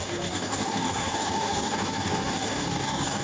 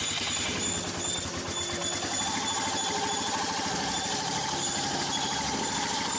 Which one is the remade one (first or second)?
first